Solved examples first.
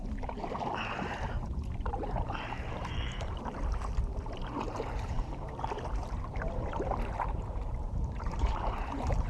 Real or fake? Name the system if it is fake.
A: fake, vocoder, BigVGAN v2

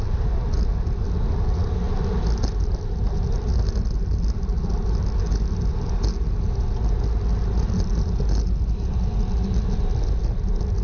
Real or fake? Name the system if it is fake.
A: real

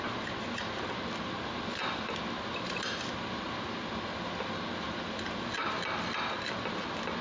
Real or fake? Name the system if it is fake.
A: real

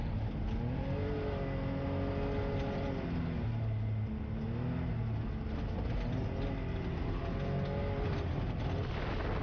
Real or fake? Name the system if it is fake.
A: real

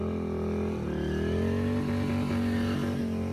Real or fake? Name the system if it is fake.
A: real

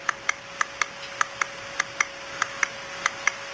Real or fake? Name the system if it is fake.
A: real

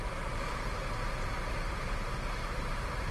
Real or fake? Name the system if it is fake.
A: fake, vocoder, BigVGAN v2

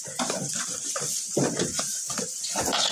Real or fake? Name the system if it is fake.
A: fake, vocoder, BigVGAN v2